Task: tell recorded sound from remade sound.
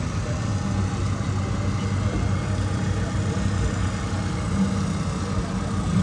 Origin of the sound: recorded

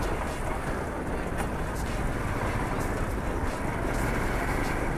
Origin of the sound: recorded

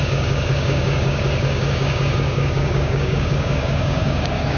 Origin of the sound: remade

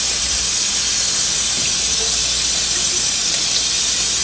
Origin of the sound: recorded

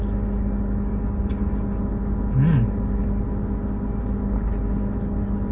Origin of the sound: recorded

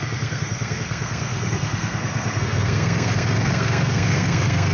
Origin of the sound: remade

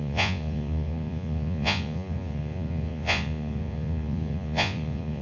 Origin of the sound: remade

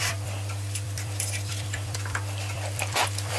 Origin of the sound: remade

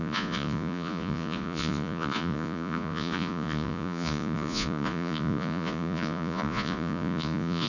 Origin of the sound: remade